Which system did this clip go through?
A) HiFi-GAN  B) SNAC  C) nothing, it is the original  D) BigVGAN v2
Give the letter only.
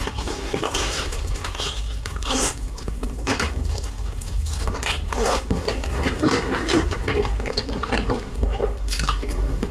B